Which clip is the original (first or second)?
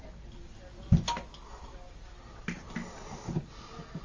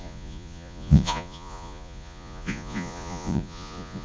first